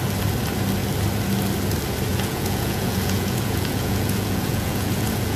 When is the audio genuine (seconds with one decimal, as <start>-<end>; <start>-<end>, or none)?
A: 0.0-2.1